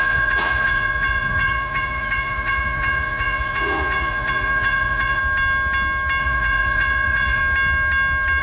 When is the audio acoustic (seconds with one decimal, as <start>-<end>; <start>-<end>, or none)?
5.2-6.2; 7.4-8.4